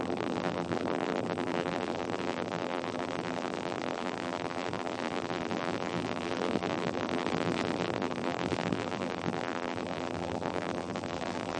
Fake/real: fake